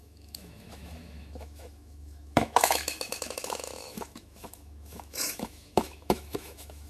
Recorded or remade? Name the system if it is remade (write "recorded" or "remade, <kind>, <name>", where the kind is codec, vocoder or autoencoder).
remade, autoencoder, DAC-VAE